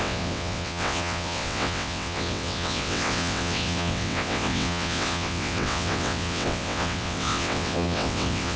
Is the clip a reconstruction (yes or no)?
yes